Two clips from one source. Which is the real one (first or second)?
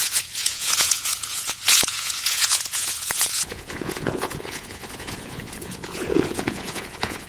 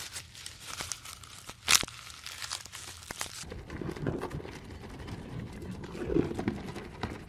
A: second